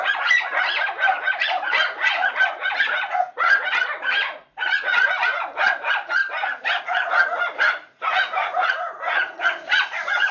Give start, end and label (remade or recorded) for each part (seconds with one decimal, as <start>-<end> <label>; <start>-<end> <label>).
0.0-6.2 remade; 6.2-6.8 recorded; 6.8-10.3 remade